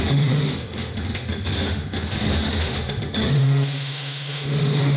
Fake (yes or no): yes